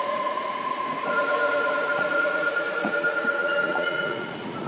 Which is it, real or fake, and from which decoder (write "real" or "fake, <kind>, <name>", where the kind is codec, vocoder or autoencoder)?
fake, vocoder, Vocos